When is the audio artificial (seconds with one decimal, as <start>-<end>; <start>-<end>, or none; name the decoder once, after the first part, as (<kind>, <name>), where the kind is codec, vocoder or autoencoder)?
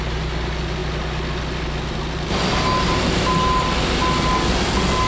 none